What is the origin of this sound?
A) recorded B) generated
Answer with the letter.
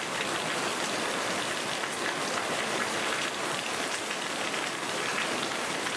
B